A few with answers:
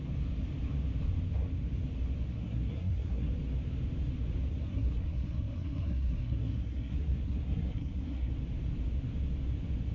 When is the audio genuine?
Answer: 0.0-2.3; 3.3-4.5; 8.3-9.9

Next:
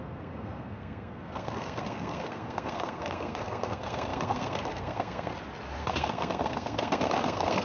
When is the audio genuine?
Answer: 5.3-5.8

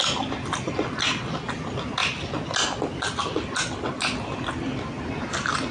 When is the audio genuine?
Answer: 0.0-5.7

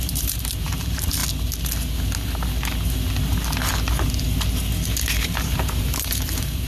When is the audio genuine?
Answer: 1.2-5.2

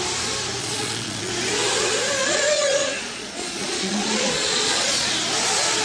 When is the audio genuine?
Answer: 0.0-0.6; 1.3-2.2; 5.1-5.8